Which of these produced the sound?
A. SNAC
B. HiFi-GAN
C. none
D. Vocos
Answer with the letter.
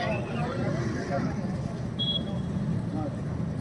C